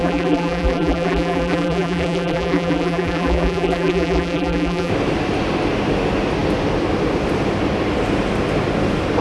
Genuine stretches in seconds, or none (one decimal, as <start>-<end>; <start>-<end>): 4.9-9.2